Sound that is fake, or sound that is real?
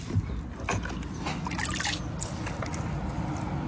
real